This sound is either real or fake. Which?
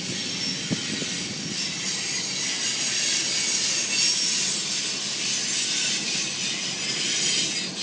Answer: real